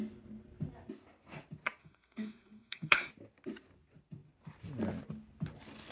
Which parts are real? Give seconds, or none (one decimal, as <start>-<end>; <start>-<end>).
0.0-1.8; 3.1-5.9